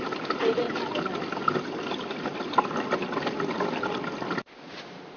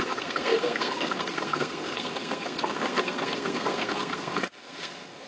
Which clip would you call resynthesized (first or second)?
second